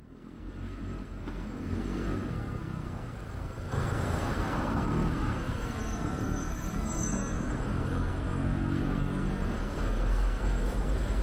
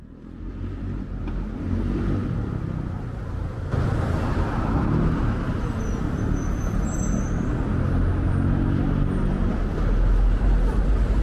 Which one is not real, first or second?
first